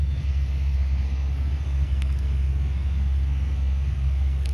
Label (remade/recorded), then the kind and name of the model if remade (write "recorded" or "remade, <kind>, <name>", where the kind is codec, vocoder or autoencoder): remade, codec, SNAC